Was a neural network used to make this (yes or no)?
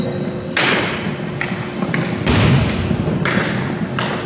no